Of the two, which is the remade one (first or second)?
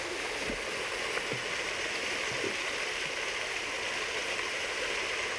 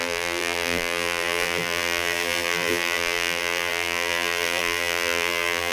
second